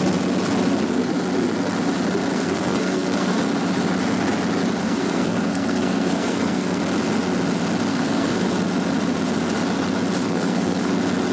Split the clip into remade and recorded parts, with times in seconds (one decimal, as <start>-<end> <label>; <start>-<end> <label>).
0.0-2.3 recorded; 2.3-3.4 remade; 3.4-4.8 recorded; 4.8-6.8 remade; 6.8-7.9 recorded; 7.9-8.5 remade; 8.5-10.2 recorded; 10.2-10.9 remade; 10.9-11.3 recorded